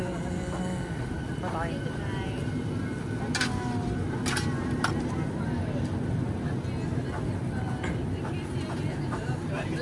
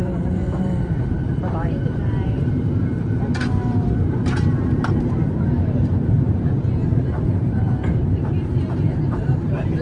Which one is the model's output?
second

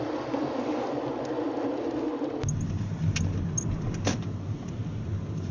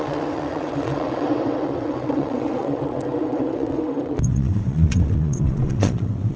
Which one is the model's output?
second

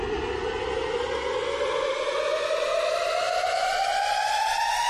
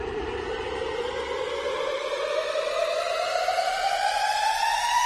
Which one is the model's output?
second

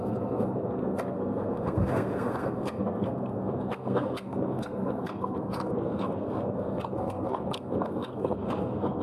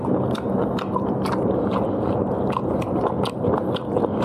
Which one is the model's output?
first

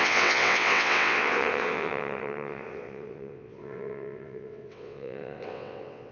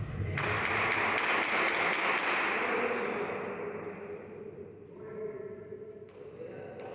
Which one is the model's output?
first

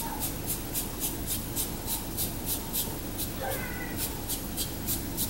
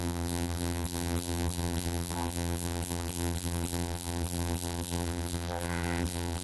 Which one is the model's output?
second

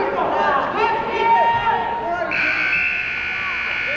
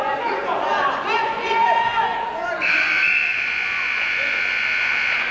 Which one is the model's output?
second